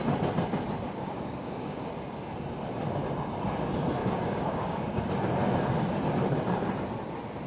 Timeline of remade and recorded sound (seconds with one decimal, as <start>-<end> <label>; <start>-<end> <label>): 0.0-1.0 recorded; 1.0-1.9 remade; 1.9-4.0 recorded; 4.0-5.1 remade; 5.1-7.5 recorded